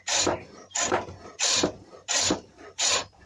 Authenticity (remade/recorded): remade